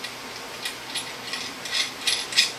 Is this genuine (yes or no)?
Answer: yes